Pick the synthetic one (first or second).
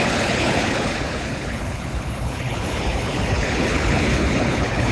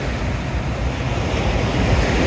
first